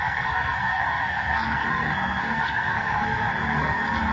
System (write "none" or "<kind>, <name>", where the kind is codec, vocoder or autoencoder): codec, SNAC